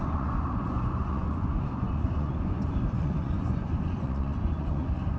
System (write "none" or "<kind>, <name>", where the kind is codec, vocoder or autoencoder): vocoder, Vocos